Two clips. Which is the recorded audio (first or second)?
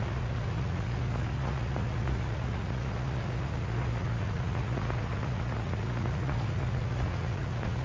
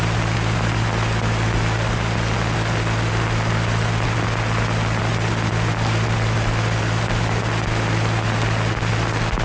second